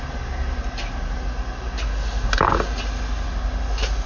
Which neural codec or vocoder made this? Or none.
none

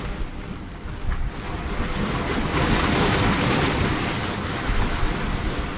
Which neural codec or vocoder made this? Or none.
none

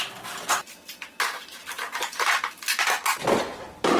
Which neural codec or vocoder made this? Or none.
none